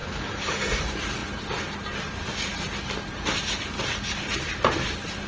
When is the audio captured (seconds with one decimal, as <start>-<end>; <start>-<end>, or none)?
0.5-5.3